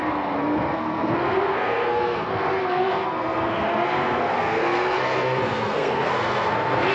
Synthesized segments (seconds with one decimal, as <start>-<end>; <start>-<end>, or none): 0.0-6.9